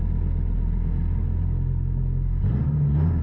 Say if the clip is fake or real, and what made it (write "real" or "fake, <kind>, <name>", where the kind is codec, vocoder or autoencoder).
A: real